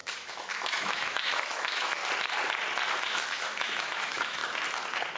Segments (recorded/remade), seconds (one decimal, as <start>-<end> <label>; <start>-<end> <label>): 0.0-2.0 remade; 2.0-3.0 recorded; 3.0-4.4 remade; 4.4-5.2 recorded